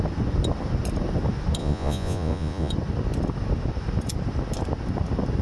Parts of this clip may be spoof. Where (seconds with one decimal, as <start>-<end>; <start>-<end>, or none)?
1.6-2.7